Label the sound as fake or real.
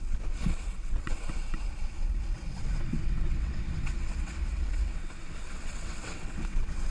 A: fake